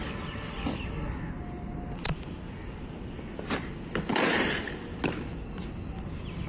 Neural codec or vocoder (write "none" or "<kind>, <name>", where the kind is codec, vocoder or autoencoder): none